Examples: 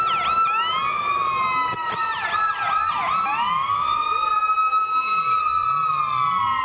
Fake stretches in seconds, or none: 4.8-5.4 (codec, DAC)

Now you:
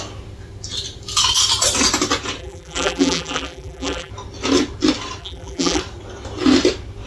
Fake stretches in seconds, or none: 2.4-4.1 (vocoder, BigVGAN v2); 5.2-5.8

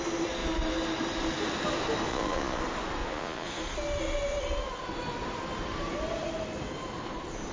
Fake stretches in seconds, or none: 2.1-2.6 (vocoder, Vocos); 3.0-3.6

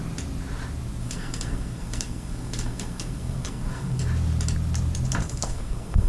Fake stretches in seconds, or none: 1.0-4.0 (codec, SNAC); 5.2-6.1

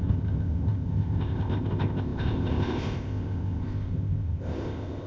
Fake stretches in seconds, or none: 0.0-5.1 (codec, ZipCodec)

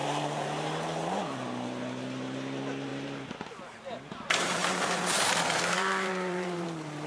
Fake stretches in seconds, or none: 0.0-1.2 (vocoder, BigVGAN v2); 2.9-7.1